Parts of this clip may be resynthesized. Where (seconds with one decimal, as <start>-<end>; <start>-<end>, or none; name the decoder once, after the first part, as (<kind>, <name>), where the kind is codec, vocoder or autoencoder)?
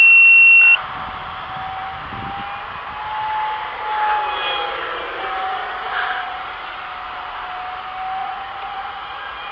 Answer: 5.5-6.8 (vocoder, Vocos); 8.2-9.5